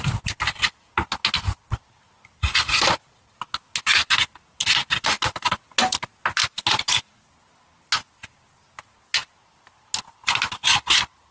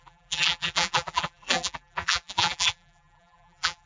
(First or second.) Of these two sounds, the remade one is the second